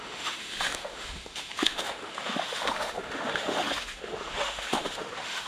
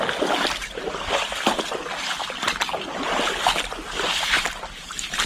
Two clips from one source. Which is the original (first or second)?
second